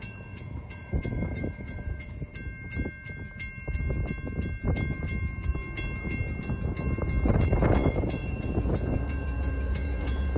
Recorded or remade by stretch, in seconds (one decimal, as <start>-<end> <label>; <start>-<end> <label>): 0.0-2.3 remade; 2.3-7.3 recorded; 7.3-10.4 remade